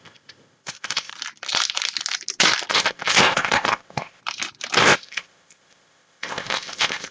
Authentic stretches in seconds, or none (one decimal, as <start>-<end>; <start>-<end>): 1.1-2.7; 4.2-4.8